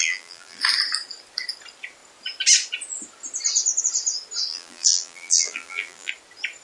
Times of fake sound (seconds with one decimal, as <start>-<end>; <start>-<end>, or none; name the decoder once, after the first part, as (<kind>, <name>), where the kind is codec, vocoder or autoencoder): 0.0-0.6 (vocoder, BigVGAN v2); 4.5-6.1